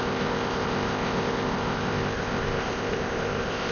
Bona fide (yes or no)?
no